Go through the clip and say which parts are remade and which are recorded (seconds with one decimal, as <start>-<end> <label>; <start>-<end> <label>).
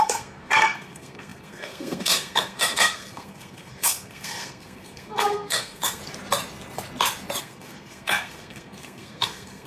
0.0-6.0 remade; 6.0-7.4 recorded; 7.4-9.7 remade